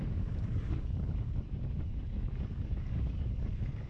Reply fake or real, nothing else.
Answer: fake